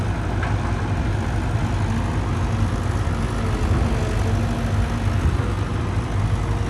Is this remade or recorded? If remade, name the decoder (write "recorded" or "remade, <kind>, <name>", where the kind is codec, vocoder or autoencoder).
recorded